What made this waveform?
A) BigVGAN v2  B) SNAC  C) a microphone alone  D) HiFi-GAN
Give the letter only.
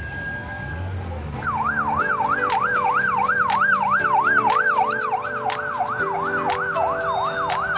C